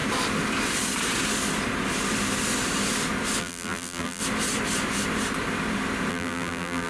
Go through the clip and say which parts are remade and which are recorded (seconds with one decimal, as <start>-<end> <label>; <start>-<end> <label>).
0.0-3.4 recorded; 3.4-4.2 remade; 4.2-6.1 recorded; 6.1-6.9 remade